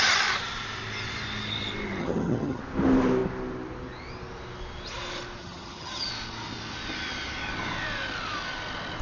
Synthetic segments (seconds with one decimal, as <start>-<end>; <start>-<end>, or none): 2.0-2.6; 5.4-6.1